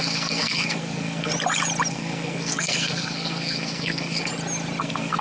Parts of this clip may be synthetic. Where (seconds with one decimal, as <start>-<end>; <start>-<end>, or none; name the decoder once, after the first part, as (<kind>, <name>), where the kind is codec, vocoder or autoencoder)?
0.0-1.3 (codec, SNAC); 1.9-4.3; 4.8-5.2